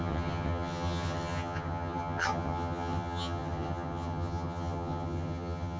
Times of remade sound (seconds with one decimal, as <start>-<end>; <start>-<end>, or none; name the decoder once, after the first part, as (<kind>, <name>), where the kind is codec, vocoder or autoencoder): 0.0-5.8 (vocoder, HiFi-GAN)